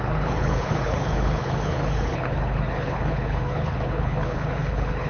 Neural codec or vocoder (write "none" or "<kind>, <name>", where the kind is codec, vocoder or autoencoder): codec, HILCodec